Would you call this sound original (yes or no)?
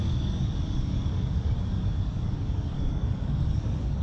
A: no